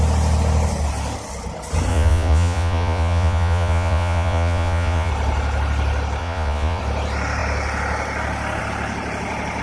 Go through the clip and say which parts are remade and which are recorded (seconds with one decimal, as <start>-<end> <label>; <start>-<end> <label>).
0.0-1.9 recorded; 1.9-5.1 remade; 5.1-6.2 recorded; 6.2-6.8 remade; 6.8-9.6 recorded